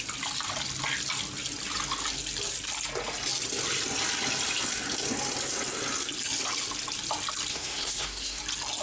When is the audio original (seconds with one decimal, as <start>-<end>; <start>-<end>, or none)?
0.0-7.5; 8.4-8.8